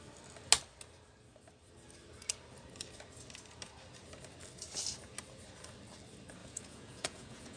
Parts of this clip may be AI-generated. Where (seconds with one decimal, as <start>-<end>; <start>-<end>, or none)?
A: 6.4-7.6

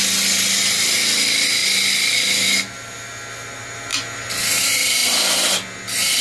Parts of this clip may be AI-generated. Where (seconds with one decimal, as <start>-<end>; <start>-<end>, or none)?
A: none

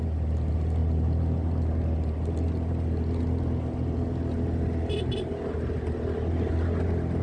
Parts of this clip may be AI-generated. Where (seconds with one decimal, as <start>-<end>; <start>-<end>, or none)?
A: none

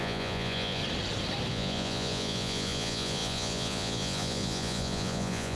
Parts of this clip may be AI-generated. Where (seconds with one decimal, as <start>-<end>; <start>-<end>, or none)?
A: 0.0-0.8; 1.5-5.6

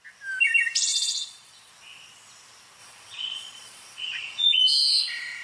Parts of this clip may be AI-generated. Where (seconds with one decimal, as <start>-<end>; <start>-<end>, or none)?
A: 0.9-1.7; 2.8-4.6

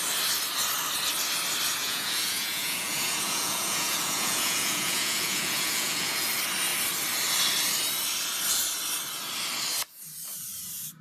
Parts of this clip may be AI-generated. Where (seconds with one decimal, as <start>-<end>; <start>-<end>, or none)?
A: 1.8-6.3

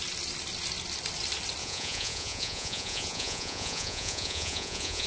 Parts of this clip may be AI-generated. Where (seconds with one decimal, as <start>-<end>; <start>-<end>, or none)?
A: 1.6-5.1